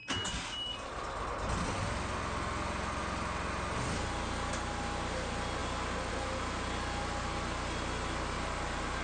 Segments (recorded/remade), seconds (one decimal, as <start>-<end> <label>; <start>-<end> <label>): 0.0-9.0 recorded